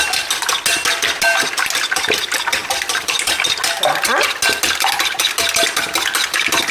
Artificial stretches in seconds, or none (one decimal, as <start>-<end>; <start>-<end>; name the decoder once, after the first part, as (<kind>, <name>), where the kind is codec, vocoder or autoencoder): 2.6-3.3 (vocoder, BigVGAN v2)

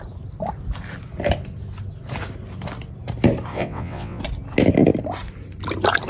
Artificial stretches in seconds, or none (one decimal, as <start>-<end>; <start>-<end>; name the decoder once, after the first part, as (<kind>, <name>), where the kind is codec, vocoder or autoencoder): 3.5-4.2 (vocoder, WaveNeXt)

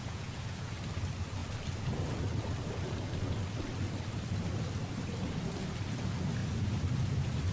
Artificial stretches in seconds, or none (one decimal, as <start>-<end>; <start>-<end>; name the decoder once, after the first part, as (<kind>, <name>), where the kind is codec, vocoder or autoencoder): 0.0-0.7 (vocoder, Vocos)

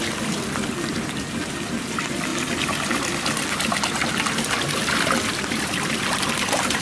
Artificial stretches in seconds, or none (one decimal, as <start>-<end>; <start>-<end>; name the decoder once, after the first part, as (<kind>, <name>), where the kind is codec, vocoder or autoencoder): 0.0-6.8 (vocoder, BigVGAN v2)